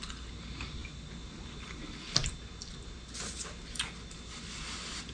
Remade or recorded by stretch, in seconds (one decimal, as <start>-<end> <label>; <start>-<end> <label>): 0.0-5.1 recorded